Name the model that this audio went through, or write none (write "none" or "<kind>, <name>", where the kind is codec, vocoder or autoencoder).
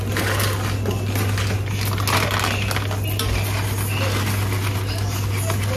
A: none